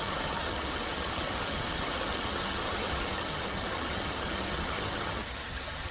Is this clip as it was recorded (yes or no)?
no